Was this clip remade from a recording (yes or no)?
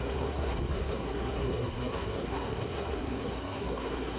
yes